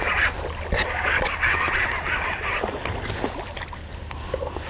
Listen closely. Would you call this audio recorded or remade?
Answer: recorded